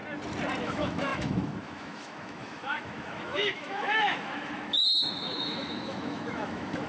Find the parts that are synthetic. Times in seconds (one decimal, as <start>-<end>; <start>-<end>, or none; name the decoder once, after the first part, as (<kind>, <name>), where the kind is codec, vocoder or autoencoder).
0.6-6.9 (autoencoder, DAC-VAE)